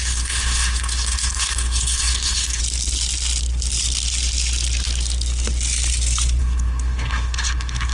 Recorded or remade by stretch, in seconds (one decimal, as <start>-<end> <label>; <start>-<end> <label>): 0.0-2.6 remade; 2.6-6.4 recorded; 6.4-7.9 remade